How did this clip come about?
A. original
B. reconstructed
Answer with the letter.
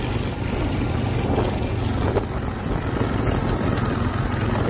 A